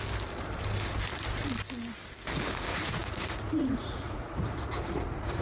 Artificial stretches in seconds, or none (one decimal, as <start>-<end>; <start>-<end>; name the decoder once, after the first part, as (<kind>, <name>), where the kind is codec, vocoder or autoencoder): 2.7-5.4 (vocoder, Vocos)